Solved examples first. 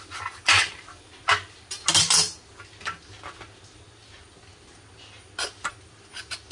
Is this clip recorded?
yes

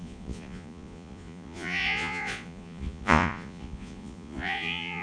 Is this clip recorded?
no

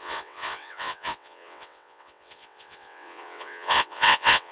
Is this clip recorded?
no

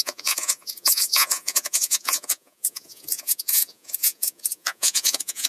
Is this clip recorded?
no